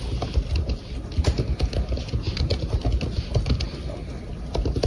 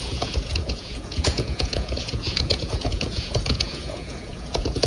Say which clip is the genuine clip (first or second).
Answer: first